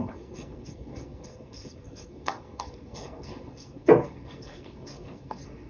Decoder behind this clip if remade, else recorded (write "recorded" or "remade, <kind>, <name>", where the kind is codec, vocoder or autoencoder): remade, codec, SNAC